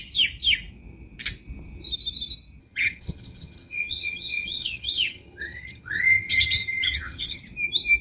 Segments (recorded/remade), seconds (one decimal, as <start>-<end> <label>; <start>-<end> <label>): 0.0-2.6 recorded; 2.6-7.4 remade; 7.4-8.0 recorded